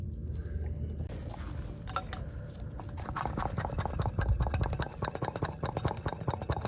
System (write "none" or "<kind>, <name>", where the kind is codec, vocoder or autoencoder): none